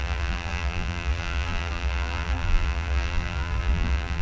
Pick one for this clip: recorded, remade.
remade